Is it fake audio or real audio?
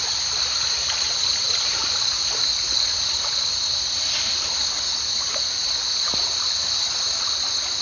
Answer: real